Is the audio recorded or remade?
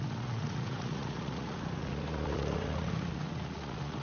remade